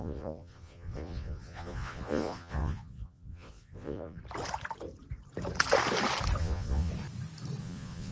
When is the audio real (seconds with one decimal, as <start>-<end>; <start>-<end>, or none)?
4.2-6.4; 6.9-7.6